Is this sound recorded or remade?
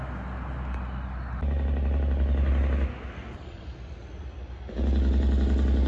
recorded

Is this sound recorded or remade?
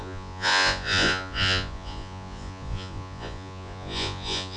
remade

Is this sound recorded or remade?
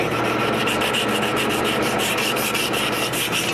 recorded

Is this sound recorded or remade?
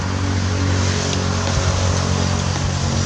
recorded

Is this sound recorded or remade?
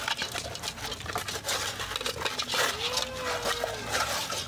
recorded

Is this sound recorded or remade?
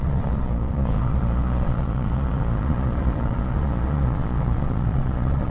remade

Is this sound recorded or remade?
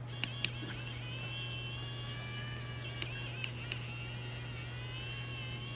recorded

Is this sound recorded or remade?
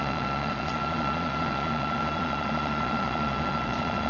remade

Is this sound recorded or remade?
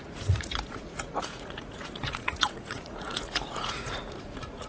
remade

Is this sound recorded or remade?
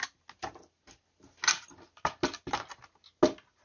recorded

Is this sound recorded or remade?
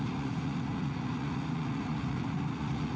remade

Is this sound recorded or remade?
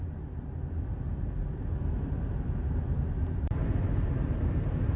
recorded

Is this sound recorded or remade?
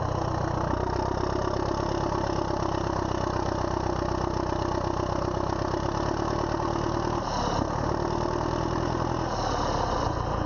recorded